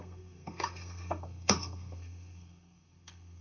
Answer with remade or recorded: remade